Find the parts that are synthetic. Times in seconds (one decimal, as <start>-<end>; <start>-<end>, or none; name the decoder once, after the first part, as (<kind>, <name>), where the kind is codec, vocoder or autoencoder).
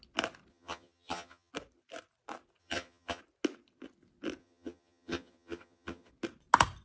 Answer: 0.5-1.5 (vocoder, HiFi-GAN); 2.6-3.2; 4.4-6.1